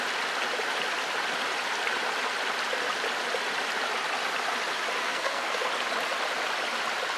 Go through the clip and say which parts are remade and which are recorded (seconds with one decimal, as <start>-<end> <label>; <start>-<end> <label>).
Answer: 0.0-5.0 recorded; 5.0-5.7 remade; 5.7-7.2 recorded